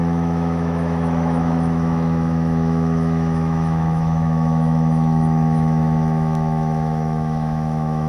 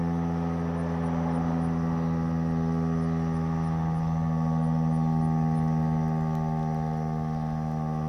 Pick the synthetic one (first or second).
first